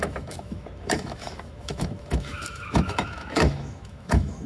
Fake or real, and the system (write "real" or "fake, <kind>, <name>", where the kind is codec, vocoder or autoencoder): fake, autoencoder, DAC-VAE